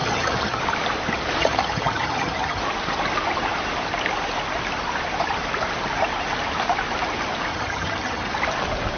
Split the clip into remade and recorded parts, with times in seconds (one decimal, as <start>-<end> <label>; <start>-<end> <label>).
0.0-0.6 remade; 0.6-1.4 recorded; 1.4-2.6 remade; 2.6-7.5 recorded; 7.5-8.3 remade; 8.3-9.0 recorded